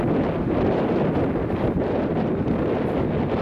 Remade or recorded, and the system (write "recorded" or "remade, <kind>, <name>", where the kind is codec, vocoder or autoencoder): recorded